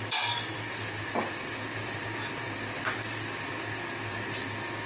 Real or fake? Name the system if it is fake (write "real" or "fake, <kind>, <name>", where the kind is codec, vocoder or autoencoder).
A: real